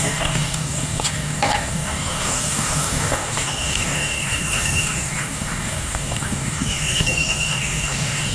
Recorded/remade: remade